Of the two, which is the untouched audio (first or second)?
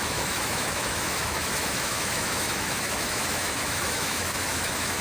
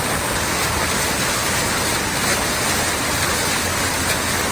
second